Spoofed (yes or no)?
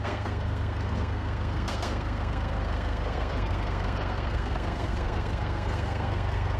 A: yes